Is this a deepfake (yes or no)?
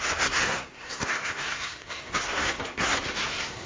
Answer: yes